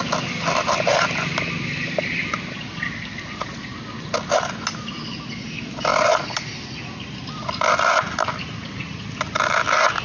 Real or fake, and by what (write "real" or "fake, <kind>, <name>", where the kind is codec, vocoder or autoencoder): real